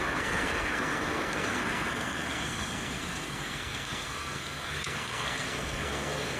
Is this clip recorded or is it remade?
remade